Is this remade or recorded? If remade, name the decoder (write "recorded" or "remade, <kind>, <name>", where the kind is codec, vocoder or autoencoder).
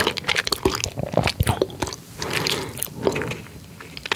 recorded